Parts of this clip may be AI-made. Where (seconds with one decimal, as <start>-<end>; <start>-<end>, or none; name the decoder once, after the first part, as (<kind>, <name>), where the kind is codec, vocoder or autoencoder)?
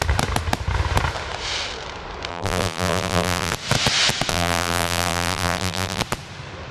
2.3-3.5 (vocoder, BigVGAN v2); 4.3-6.0